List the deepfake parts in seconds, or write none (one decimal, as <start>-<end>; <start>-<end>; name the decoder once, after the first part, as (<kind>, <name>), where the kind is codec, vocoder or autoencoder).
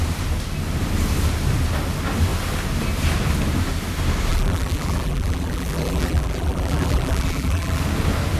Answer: 4.3-7.8 (vocoder, BigVGAN v2)